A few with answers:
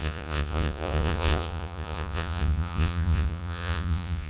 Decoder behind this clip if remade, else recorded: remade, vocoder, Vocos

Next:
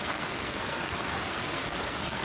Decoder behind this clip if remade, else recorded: remade, codec, SNAC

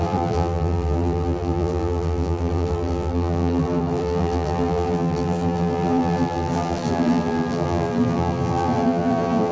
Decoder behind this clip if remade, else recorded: remade, vocoder, BigVGAN v2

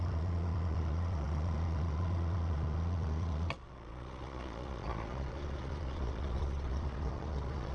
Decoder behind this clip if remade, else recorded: remade, vocoder, Vocos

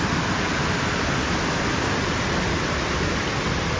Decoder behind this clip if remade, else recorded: recorded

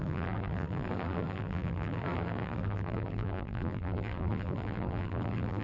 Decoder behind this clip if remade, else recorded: remade, vocoder, BigVGAN v2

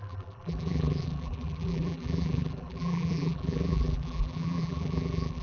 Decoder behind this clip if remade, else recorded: remade, vocoder, BigVGAN v2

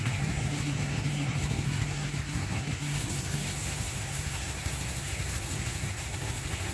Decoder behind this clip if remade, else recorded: remade, codec, SNAC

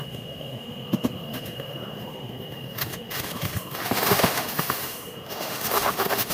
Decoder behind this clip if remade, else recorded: remade, autoencoder, DAC-VAE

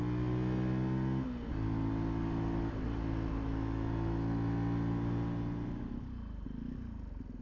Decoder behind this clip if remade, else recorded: recorded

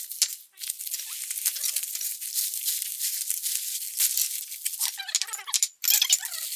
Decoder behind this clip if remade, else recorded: recorded